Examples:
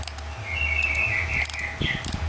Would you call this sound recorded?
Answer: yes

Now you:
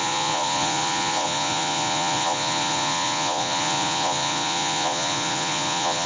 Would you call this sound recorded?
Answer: no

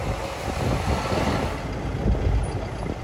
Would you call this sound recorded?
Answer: yes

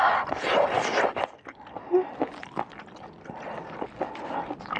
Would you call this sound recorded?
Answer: yes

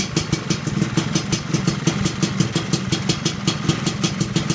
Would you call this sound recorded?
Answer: no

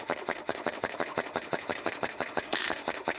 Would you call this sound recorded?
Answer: no